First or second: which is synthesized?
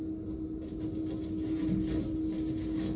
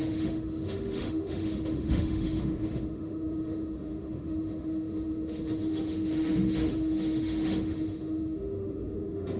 second